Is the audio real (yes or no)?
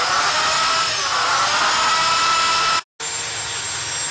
yes